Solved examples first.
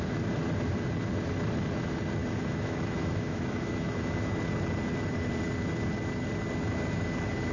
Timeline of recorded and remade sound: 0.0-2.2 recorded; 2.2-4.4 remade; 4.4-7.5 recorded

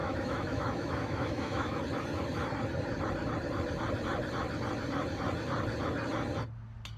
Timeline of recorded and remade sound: 0.0-1.8 remade; 1.8-7.0 recorded